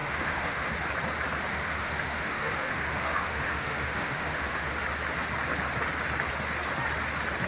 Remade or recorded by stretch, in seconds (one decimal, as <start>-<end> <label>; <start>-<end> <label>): 0.0-0.7 remade; 0.7-1.5 recorded; 1.5-4.7 remade; 4.7-7.5 recorded